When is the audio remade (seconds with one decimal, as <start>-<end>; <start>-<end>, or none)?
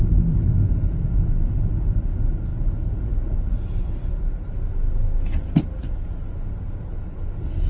none